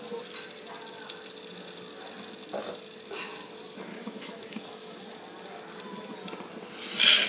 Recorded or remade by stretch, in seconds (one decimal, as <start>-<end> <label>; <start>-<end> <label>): 0.0-3.9 recorded; 3.9-5.0 remade; 5.0-7.3 recorded